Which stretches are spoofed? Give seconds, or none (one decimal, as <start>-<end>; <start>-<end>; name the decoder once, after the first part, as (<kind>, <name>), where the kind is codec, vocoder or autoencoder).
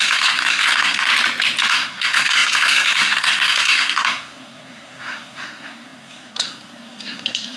0.0-1.1 (codec, SNAC); 1.7-7.6